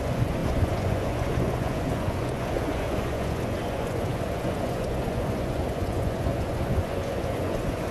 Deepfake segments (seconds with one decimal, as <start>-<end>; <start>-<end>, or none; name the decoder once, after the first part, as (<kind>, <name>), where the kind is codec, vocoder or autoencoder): 0.0-7.9 (vocoder, Vocos)